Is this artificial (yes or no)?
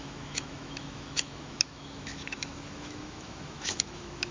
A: yes